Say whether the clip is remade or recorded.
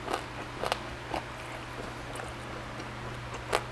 recorded